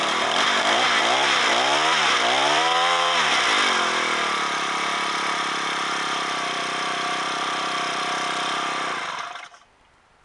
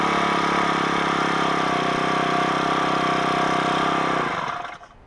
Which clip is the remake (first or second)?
first